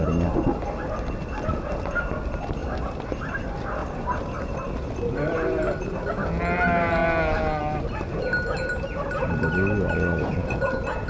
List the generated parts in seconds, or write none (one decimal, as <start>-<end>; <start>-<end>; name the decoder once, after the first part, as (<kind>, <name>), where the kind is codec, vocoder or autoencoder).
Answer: 2.6-3.4 (vocoder, BigVGAN v2); 3.8-6.1